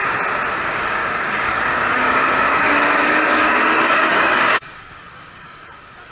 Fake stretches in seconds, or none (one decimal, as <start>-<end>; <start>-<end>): 0.6-6.1